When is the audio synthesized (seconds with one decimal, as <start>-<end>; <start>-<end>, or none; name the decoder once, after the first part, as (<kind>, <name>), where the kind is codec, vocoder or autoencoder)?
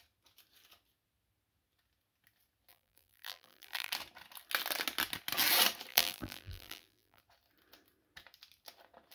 2.7-3.9 (vocoder, BigVGAN v2); 5.9-7.2